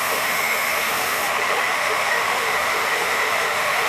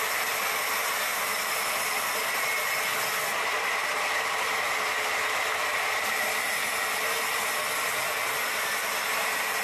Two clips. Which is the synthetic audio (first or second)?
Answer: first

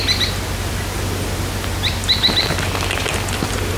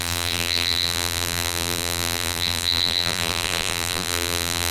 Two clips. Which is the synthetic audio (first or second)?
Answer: second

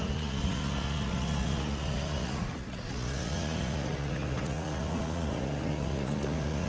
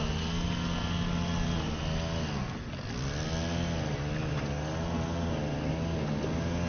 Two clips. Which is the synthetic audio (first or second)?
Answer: first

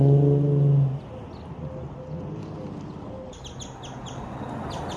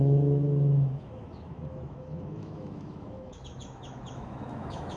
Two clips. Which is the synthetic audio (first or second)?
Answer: second